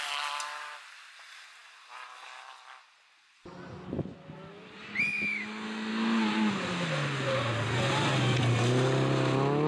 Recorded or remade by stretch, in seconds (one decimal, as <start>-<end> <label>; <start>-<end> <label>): 0.0-9.7 recorded